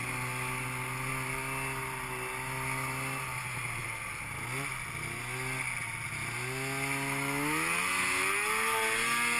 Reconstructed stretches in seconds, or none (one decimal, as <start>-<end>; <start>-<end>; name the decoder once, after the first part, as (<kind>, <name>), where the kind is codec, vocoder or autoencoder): none